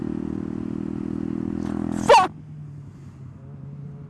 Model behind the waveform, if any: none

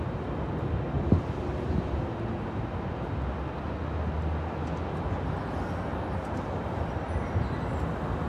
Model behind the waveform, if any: none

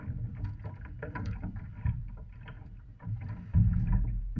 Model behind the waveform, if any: vocoder, BigVGAN v2